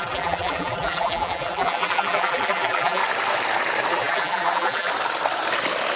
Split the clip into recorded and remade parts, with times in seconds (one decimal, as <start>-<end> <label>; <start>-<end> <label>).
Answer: 0.0-3.0 remade; 3.0-3.9 recorded; 3.9-4.9 remade; 4.9-6.0 recorded